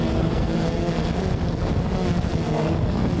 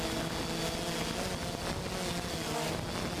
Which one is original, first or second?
second